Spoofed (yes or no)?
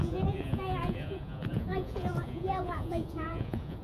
yes